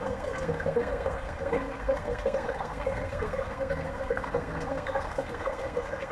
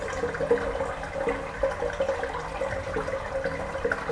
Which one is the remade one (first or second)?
first